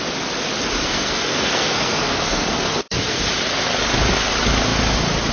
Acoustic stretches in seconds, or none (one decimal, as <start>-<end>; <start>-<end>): 0.0-0.8; 3.2-5.3

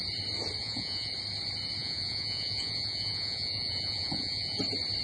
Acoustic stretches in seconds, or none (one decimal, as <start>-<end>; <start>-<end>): 0.0-0.6; 1.1-1.8; 4.6-5.0

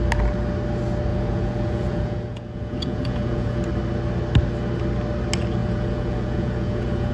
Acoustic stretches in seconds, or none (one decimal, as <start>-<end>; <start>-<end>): 0.0-1.1; 3.6-5.6